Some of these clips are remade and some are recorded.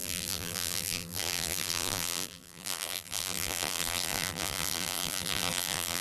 remade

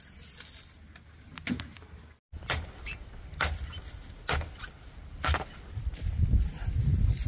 recorded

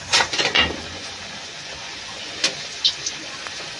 remade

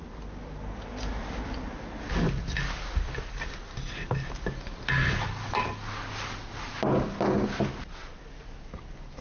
recorded